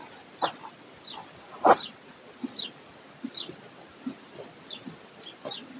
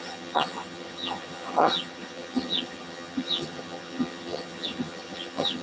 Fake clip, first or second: second